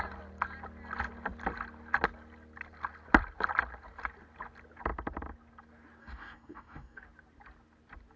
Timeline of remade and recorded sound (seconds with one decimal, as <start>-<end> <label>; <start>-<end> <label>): 0.0-6.0 recorded; 6.0-7.0 remade; 7.0-8.2 recorded